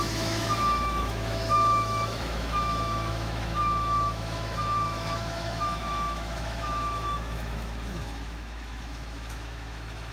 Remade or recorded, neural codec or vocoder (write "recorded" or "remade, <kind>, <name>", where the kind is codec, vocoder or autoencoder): remade, autoencoder, DAC-VAE